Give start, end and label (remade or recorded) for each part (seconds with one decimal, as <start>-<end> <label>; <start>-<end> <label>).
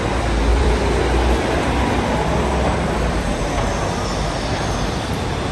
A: 0.0-0.5 recorded; 0.5-3.6 remade; 3.6-5.5 recorded